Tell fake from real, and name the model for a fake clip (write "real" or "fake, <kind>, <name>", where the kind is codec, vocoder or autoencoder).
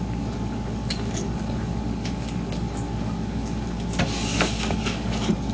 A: fake, codec, DAC